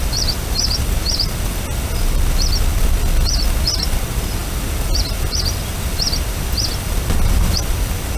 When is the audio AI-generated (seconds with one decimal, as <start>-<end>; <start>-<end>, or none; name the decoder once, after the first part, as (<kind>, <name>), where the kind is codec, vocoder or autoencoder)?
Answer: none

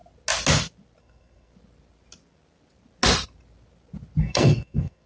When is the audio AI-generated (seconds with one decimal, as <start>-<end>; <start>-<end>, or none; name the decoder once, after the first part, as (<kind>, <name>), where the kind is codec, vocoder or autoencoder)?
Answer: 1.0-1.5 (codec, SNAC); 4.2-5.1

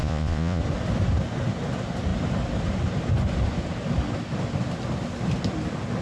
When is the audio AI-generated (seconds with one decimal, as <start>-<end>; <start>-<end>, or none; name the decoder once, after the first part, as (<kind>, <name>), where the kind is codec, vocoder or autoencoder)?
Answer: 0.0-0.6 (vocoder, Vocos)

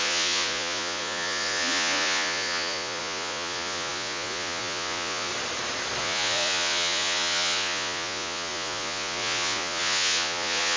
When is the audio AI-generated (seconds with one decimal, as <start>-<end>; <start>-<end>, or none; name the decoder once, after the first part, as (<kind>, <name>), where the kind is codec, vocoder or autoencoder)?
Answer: 0.0-5.3 (vocoder, Vocos); 6.0-10.8

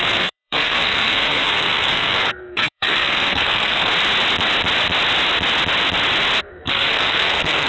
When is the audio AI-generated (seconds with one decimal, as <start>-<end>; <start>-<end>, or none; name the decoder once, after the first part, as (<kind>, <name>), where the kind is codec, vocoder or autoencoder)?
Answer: 0.0-3.9 (codec, SNAC); 6.4-7.7